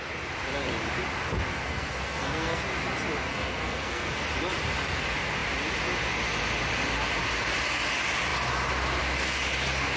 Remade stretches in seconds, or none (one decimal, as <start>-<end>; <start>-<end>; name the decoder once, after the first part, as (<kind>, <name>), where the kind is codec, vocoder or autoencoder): 1.5-2.6 (codec, SNAC); 3.3-4.1